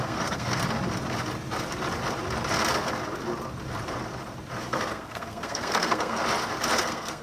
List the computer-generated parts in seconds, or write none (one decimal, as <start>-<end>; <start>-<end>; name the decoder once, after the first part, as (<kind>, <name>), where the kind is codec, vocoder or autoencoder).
0.0-0.6 (codec, SNAC); 4.6-6.2; 6.8-7.2